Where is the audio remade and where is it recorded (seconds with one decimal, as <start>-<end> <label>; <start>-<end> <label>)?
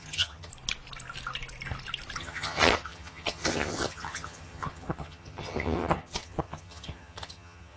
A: 0.0-0.5 remade; 0.5-2.2 recorded; 2.2-7.8 remade